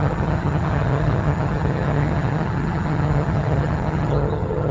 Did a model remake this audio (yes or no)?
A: yes